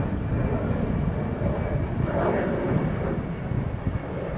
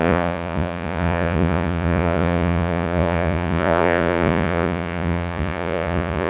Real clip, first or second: first